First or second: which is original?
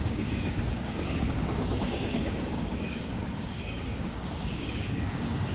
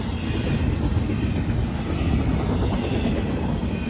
second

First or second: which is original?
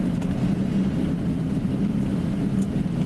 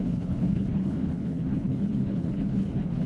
first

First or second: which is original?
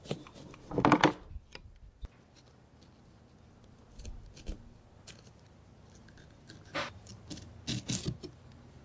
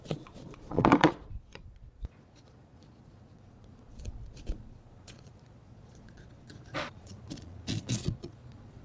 first